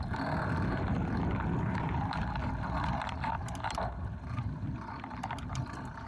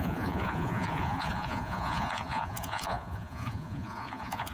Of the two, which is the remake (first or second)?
second